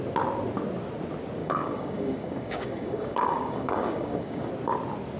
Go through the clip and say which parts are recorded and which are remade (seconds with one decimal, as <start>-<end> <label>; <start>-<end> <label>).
0.0-1.4 recorded; 1.4-4.5 remade; 4.5-5.2 recorded